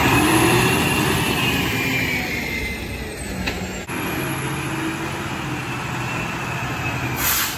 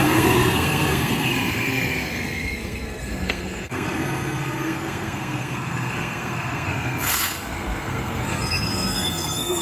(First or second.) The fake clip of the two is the second